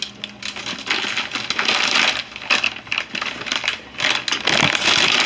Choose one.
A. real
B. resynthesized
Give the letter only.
A